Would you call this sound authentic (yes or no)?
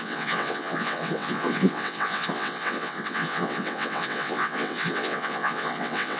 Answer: no